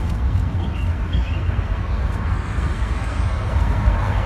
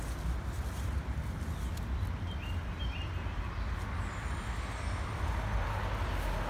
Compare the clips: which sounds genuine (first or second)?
second